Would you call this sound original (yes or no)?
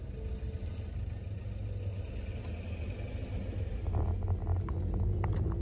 yes